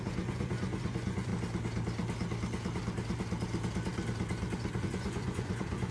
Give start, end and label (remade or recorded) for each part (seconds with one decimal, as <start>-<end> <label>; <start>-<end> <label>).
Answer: 0.0-1.3 remade; 1.3-4.8 recorded; 4.8-5.9 remade